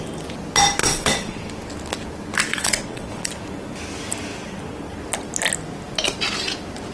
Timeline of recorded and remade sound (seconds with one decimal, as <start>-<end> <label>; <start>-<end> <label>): 0.0-0.8 recorded; 0.8-1.4 remade; 1.4-2.5 recorded; 2.5-3.3 remade; 3.3-6.9 recorded